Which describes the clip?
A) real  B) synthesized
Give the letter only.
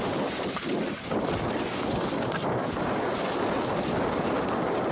A